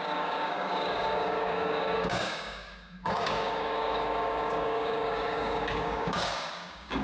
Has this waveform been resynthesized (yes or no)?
yes